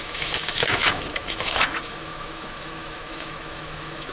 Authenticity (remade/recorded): remade